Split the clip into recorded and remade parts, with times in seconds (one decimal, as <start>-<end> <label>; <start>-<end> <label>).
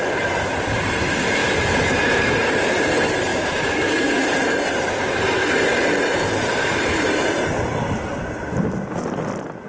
0.0-9.7 recorded